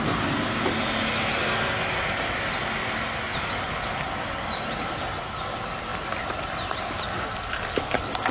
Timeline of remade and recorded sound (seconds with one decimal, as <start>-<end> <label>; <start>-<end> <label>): 0.0-8.3 recorded